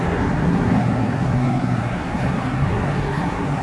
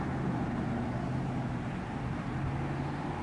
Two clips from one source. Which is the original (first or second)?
second